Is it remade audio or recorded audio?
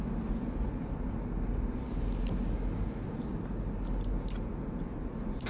recorded